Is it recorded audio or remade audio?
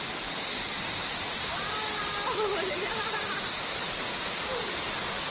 recorded